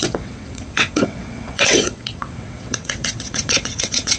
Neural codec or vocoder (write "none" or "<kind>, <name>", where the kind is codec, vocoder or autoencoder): vocoder, WaveNeXt